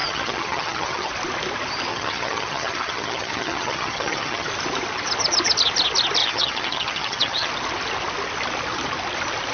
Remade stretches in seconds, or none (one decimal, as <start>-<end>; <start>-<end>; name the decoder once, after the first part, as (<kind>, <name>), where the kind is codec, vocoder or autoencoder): 0.0-1.1 (vocoder, HiFi-GAN); 1.9-4.5; 6.2-7.5